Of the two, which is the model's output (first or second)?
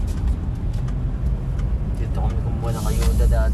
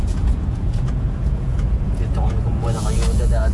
second